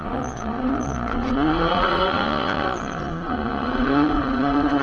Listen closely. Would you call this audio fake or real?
fake